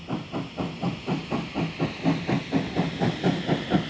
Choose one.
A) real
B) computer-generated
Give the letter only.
A